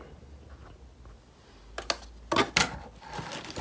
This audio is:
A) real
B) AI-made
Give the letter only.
A